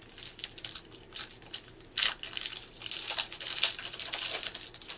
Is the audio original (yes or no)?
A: yes